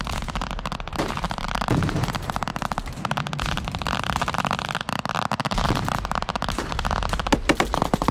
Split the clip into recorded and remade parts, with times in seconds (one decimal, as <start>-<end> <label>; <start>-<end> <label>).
0.0-8.1 recorded